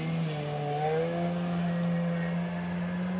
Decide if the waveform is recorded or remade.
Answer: recorded